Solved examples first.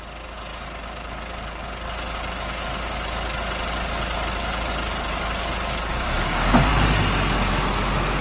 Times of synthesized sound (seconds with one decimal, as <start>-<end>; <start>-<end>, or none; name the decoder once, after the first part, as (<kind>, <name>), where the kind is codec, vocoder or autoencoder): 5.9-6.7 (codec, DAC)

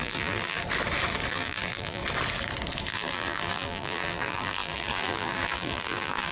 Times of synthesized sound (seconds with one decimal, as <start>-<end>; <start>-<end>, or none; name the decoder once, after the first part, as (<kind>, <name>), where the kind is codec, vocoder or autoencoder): 0.0-0.6 (vocoder, BigVGAN v2); 1.3-2.0; 2.9-6.3

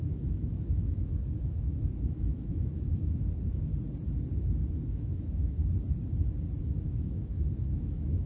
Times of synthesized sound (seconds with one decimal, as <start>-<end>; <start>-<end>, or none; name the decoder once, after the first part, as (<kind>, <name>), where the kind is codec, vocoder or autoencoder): 0.0-3.7 (autoencoder, DAC-VAE); 4.7-5.6; 6.6-8.3